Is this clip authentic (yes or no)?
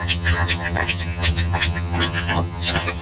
no